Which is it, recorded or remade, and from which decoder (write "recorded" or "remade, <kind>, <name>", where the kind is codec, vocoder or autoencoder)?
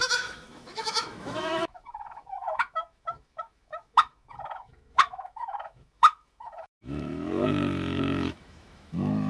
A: remade, autoencoder, DAC-VAE